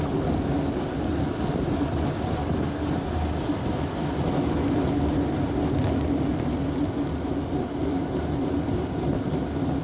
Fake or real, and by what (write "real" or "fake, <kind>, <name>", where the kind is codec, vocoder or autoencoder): real